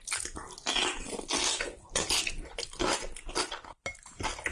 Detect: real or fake real